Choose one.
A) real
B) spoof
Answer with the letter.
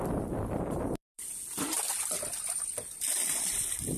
B